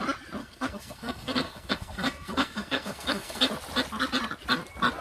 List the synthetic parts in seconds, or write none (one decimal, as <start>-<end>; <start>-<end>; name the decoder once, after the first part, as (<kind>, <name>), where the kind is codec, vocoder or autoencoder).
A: 0.4-3.4 (codec, SNAC)